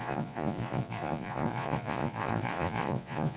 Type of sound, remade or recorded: remade